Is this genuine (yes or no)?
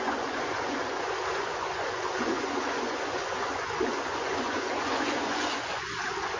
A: no